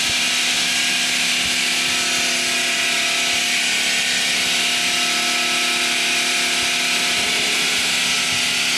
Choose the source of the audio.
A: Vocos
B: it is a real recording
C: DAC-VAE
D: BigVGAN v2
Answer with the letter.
B